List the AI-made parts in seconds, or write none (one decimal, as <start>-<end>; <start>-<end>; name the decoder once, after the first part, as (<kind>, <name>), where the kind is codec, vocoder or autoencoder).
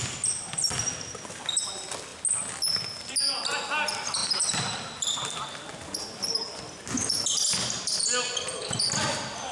none